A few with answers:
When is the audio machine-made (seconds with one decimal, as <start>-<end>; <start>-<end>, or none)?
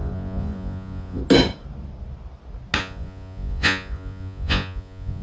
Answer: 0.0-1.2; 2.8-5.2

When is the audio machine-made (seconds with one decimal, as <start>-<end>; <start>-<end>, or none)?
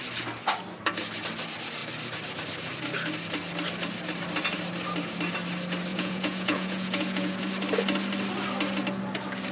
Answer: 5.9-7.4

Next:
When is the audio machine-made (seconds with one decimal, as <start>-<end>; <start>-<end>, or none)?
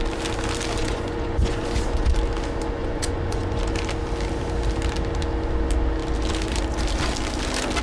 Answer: 0.8-2.1; 2.8-3.6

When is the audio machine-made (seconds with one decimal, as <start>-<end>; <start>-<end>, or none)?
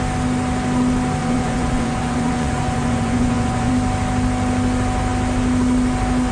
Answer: 1.2-3.7